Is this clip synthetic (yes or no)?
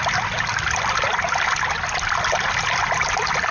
no